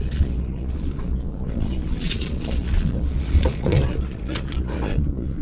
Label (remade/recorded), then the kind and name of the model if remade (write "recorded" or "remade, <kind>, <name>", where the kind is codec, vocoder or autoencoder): remade, vocoder, Vocos